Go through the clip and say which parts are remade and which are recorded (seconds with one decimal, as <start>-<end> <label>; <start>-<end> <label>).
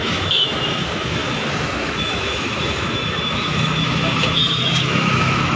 0.0-5.6 remade